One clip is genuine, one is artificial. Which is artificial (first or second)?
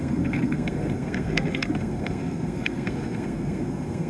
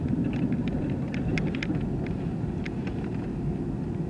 first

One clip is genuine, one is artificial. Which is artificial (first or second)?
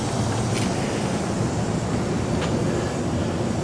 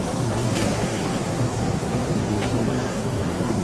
second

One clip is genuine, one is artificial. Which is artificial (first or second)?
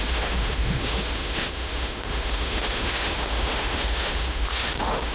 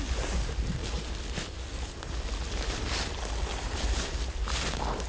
first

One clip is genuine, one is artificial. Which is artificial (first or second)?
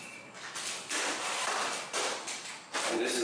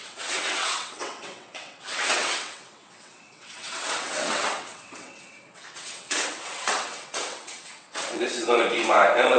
second